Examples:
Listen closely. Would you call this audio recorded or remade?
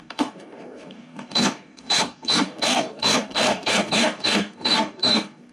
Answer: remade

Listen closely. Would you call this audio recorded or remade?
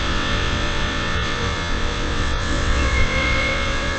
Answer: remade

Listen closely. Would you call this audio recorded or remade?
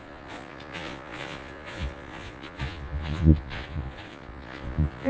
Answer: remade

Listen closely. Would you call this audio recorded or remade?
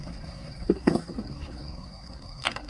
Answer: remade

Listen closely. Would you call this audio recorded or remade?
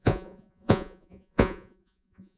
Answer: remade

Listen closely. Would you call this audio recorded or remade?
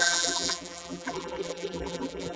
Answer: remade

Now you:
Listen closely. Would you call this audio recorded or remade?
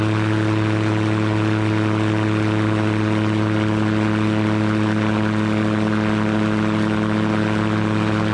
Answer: recorded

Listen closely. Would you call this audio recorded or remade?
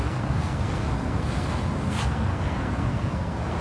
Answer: remade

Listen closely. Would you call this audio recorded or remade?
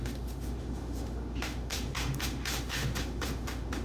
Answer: remade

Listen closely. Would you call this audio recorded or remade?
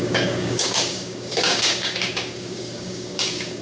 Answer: remade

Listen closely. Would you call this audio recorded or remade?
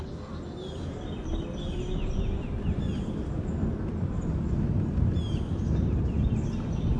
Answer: recorded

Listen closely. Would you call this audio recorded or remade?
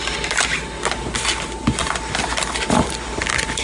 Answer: recorded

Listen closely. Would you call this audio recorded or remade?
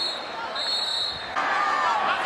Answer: remade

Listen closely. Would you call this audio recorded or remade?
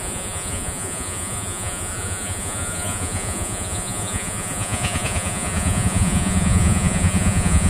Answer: remade